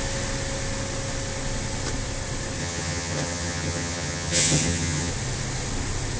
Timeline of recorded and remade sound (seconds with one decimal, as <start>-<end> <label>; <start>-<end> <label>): 0.0-2.6 recorded; 2.6-5.1 remade; 5.1-6.2 recorded